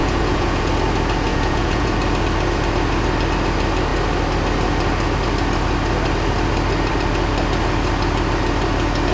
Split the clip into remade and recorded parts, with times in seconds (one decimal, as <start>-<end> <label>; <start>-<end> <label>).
0.0-0.7 remade; 0.7-1.3 recorded; 1.3-1.9 remade; 1.9-9.1 recorded